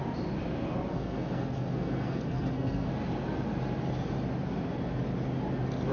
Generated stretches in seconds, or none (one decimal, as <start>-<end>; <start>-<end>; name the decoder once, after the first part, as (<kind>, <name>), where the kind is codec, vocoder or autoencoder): 0.9-2.9 (codec, SNAC)